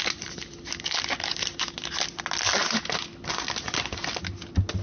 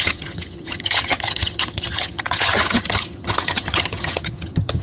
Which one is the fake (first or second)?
second